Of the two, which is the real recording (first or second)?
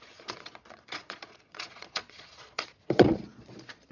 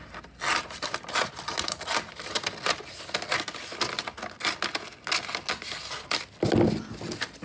second